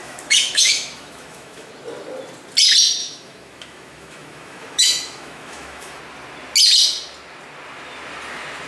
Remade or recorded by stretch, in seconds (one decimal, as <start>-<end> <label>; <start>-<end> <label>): 0.0-1.7 remade; 1.7-3.0 recorded; 3.0-6.0 remade; 6.0-8.7 recorded